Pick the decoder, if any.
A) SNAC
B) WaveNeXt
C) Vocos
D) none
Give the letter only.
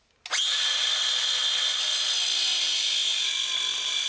D